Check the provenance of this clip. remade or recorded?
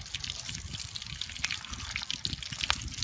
recorded